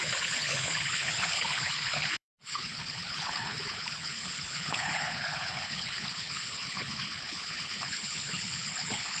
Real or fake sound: fake